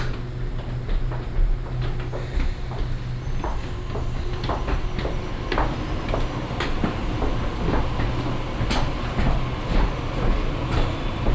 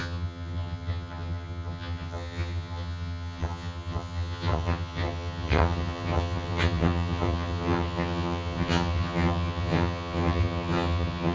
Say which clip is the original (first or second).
first